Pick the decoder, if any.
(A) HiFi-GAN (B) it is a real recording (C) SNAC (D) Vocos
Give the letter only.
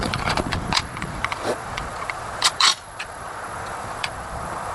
D